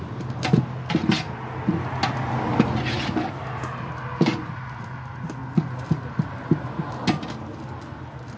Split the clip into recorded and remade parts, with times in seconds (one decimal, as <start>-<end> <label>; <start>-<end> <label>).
0.0-8.4 recorded